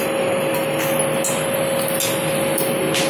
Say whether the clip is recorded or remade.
recorded